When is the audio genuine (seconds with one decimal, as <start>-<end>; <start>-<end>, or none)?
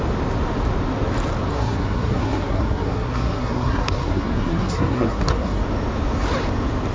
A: 0.0-1.5; 5.6-6.9